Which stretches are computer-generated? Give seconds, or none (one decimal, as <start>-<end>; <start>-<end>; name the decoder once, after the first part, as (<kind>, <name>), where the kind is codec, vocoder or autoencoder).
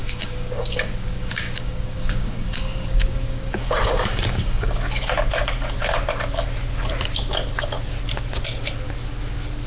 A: 0.0-4.7 (codec, DAC)